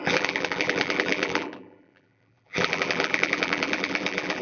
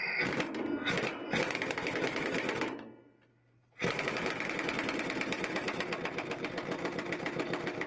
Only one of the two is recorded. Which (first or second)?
second